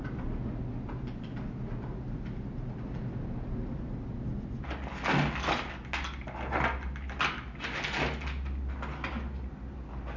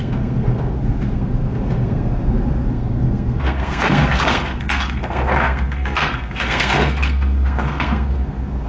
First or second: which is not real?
second